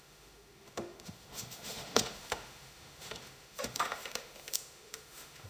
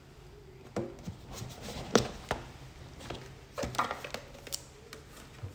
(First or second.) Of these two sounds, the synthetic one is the first